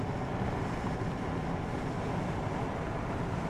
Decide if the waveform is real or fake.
real